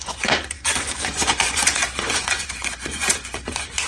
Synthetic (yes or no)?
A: yes